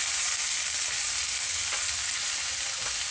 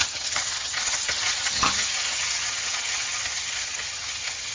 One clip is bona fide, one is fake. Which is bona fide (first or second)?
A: first